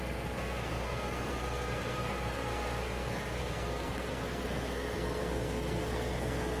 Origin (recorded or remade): remade